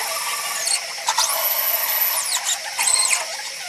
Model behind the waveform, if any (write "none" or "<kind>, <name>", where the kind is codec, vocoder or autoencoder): vocoder, BigVGAN v2